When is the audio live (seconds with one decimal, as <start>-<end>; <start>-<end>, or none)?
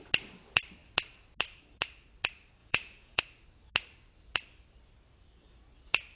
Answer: 0.0-2.6; 3.2-6.2